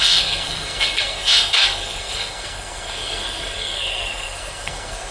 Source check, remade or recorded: remade